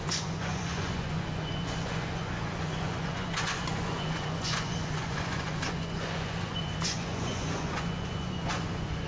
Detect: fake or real fake